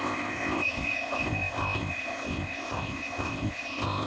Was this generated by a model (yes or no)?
yes